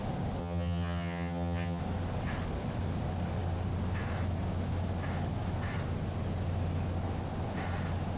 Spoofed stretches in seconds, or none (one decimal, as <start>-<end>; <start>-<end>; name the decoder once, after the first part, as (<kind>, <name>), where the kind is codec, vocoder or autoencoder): 0.4-1.8 (vocoder, HiFi-GAN)